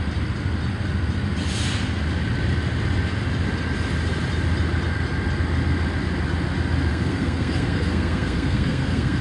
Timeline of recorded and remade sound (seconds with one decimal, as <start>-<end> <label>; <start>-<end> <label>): 0.0-6.9 recorded; 6.9-9.2 remade